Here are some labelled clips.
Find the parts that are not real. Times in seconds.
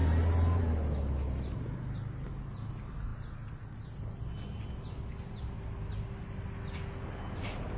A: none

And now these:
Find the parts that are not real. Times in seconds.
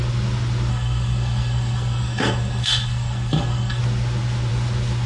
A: 0.7-3.8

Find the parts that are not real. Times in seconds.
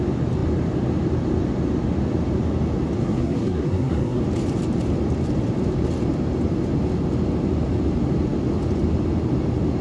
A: 3.0-4.2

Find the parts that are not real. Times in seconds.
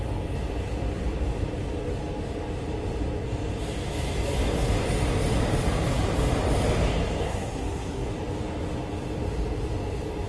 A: 7.2-8.1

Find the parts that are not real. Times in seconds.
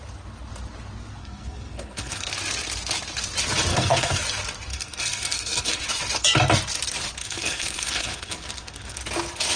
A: 1.2-2.3; 3.7-4.2; 4.7-5.8; 7.2-9.0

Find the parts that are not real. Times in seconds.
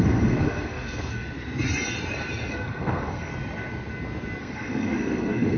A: 0.0-1.1; 2.5-3.3; 4.4-5.6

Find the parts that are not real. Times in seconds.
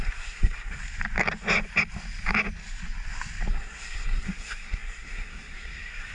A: 0.0-0.8; 3.5-6.1